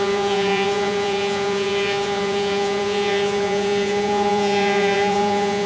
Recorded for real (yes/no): no